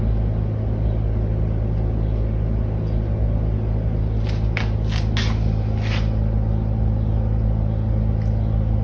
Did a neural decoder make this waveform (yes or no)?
no